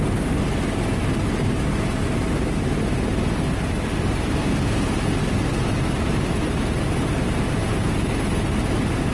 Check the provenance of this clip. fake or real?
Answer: real